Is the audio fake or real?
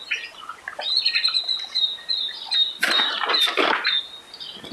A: real